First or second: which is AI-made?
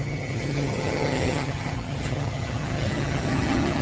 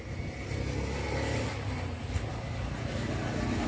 first